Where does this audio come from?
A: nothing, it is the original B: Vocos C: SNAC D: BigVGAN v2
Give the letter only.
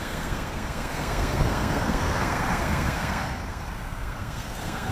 C